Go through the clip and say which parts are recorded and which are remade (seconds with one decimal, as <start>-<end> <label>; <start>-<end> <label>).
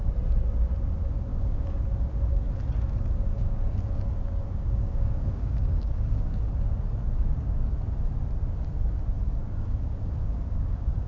0.0-1.3 recorded; 1.3-1.8 remade; 1.8-3.3 recorded; 3.3-6.4 remade; 6.4-9.4 recorded; 9.4-11.1 remade